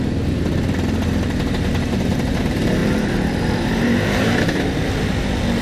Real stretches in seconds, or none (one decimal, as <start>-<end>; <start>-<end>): 0.0-2.8; 4.6-5.6